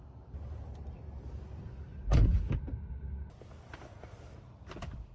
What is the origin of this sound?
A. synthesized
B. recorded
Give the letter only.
B